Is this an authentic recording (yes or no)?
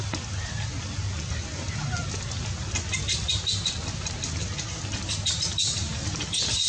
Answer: yes